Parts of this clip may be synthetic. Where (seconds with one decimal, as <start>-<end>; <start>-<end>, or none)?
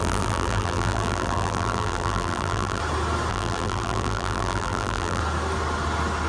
0.0-2.8; 3.3-5.2